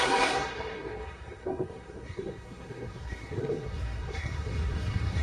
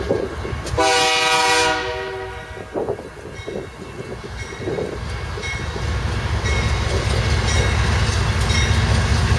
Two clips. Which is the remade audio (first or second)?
first